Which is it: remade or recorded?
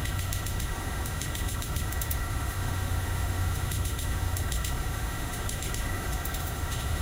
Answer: remade